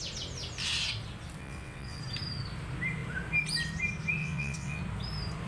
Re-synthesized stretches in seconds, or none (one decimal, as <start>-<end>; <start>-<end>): 1.4-2.0; 4.2-4.8